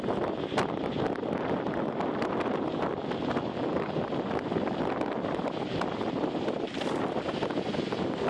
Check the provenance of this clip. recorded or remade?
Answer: remade